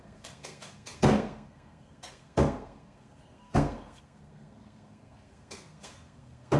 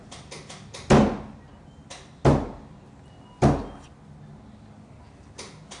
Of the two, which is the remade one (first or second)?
first